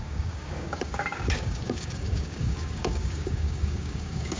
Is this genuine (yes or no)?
no